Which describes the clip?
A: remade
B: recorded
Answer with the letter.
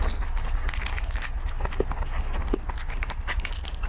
B